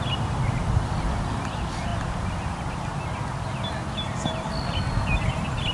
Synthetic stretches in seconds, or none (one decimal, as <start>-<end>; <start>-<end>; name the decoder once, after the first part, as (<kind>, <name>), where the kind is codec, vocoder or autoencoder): none

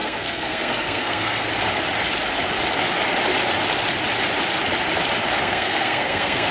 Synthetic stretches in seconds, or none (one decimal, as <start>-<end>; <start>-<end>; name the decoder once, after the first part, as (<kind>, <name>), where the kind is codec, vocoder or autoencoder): 0.0-1.5 (codec, SNAC); 5.4-6.5

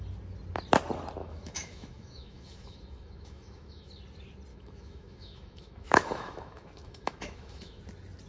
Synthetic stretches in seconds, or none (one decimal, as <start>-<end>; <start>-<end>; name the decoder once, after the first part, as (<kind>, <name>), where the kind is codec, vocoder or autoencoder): 1.2-3.9 (autoencoder, DAC-VAE); 4.5-7.8

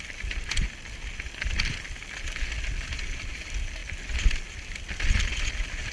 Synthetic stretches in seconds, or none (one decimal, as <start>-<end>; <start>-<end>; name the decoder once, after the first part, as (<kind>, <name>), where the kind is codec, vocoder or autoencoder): none

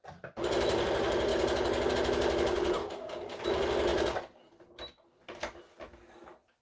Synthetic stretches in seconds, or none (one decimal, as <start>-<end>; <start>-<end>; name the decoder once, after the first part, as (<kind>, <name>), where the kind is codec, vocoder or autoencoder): 2.8-3.4 (codec, DAC)